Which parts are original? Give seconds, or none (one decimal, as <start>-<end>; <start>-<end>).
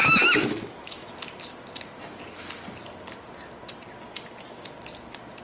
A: 1.1-5.4